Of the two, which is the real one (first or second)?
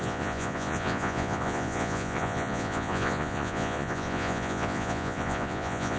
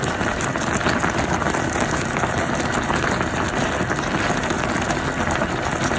second